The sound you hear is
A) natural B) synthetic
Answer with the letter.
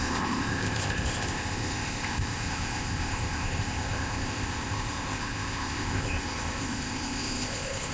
B